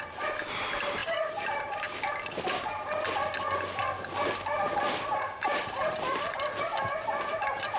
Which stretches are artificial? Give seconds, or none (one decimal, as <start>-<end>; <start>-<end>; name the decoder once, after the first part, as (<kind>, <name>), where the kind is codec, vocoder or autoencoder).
1.0-2.0 (vocoder, BigVGAN v2); 5.1-5.9